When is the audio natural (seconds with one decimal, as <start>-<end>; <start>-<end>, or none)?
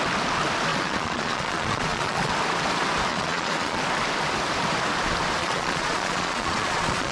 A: 0.0-0.7; 2.3-3.1; 3.8-5.4